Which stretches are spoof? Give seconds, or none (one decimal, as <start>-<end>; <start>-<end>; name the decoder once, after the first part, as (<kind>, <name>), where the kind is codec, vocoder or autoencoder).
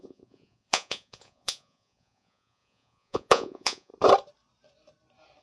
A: 0.0-3.9 (vocoder, Vocos)